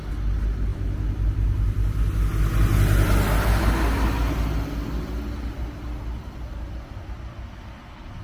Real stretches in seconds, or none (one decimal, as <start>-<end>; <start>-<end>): 0.0-8.2